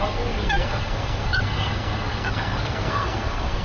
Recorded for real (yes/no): no